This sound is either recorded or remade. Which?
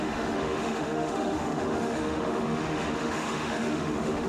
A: remade